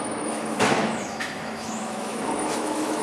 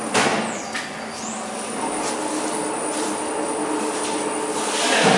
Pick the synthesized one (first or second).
first